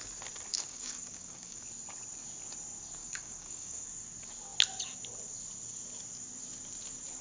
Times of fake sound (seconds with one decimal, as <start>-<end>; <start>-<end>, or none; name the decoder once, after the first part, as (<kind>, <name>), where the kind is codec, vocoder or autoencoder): 0.5-1.6 (codec, DAC); 3.0-3.9